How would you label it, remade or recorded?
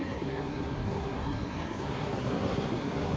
remade